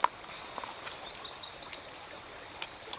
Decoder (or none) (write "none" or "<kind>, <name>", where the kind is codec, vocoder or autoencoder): none